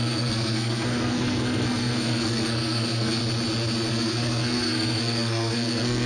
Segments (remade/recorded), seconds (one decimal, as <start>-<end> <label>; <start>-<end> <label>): 0.0-3.2 remade; 3.2-3.9 recorded; 3.9-6.1 remade